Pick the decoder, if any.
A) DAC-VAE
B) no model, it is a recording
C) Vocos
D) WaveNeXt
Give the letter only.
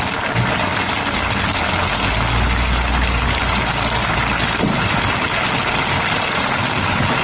B